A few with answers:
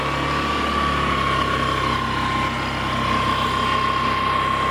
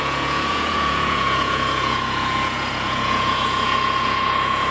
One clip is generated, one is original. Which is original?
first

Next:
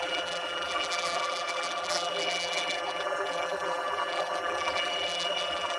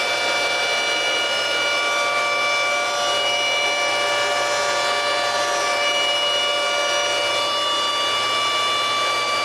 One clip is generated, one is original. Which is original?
second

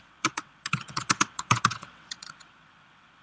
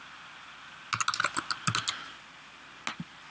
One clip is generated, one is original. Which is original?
second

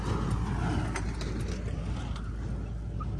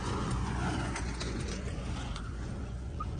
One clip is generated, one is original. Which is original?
first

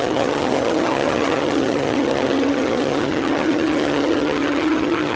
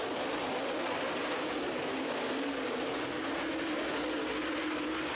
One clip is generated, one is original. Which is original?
second